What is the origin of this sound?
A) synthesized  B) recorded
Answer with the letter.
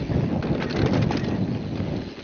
B